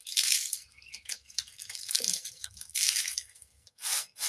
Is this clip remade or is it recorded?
remade